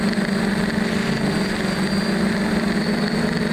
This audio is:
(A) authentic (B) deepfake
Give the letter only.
A